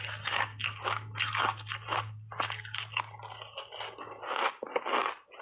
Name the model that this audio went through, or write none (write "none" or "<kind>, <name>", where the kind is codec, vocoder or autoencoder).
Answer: none